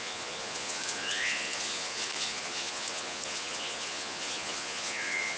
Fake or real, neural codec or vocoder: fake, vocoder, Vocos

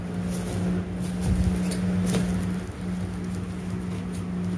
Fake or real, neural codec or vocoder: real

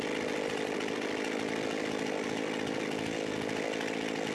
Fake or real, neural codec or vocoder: real